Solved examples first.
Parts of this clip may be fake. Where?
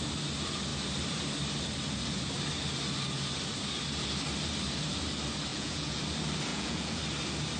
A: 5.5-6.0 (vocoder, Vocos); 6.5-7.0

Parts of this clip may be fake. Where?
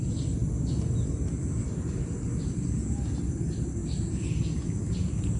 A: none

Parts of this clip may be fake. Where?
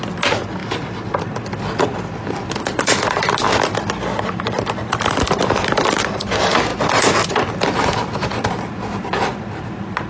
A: none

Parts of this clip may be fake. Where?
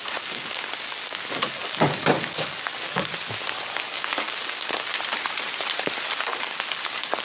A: 0.0-3.1 (codec, DAC); 3.8-4.9; 6.2-7.2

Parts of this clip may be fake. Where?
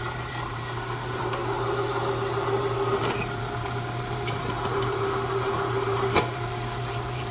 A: 0.0-1.4 (vocoder, BigVGAN v2); 3.0-7.3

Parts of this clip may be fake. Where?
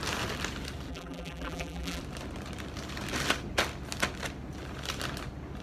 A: 0.9-2.0 (vocoder, BigVGAN v2)